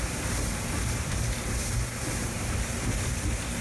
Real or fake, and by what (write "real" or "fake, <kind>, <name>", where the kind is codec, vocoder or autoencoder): fake, vocoder, BigVGAN v2